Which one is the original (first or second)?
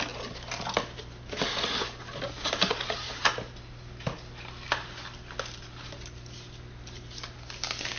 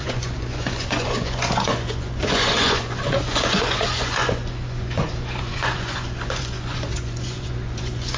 first